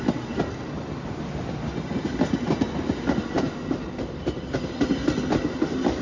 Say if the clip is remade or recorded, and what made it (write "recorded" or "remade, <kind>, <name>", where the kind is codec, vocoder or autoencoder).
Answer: recorded